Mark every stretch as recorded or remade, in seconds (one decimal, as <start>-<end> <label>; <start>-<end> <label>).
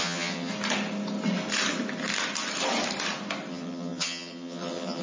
0.0-0.5 remade; 0.5-3.5 recorded; 3.5-5.0 remade